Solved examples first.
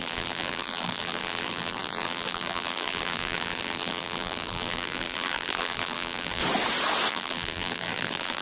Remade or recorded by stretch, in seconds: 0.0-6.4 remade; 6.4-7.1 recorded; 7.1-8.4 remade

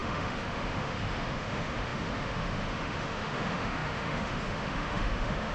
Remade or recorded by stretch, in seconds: 0.0-5.5 remade

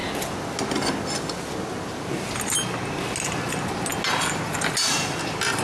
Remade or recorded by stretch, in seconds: 0.0-5.6 recorded

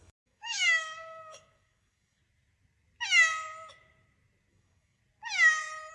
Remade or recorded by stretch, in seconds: 0.0-2.2 remade; 2.2-4.5 recorded; 4.5-5.0 remade; 5.0-5.9 recorded